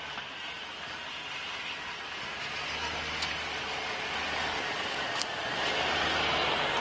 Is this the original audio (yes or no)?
yes